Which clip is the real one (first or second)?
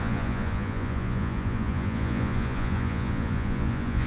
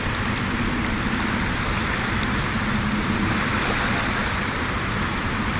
second